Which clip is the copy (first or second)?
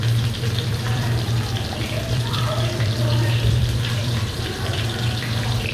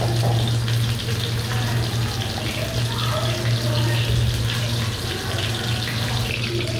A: first